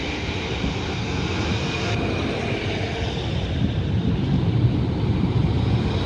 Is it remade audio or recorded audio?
recorded